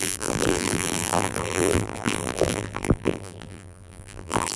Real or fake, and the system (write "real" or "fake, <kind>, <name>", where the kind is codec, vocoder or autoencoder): fake, vocoder, BigVGAN v2